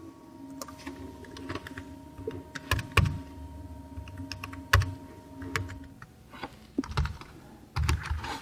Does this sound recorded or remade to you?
recorded